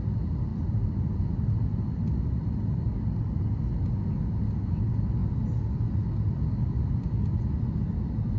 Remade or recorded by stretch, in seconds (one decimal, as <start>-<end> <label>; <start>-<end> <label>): 0.0-0.5 recorded; 0.5-3.3 remade; 3.3-8.4 recorded